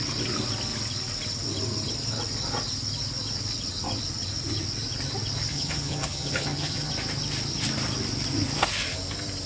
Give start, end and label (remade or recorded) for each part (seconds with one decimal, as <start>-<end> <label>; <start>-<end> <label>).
0.0-5.5 recorded; 5.5-6.9 remade; 6.9-9.5 recorded